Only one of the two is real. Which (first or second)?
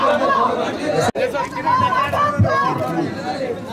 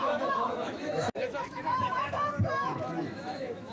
first